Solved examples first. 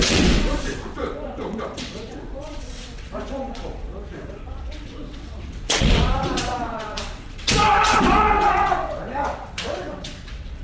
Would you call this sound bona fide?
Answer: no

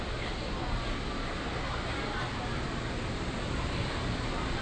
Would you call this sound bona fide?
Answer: yes